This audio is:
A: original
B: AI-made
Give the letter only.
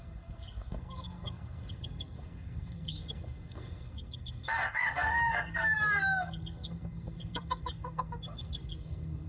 B